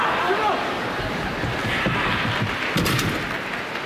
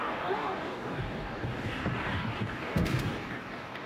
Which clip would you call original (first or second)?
first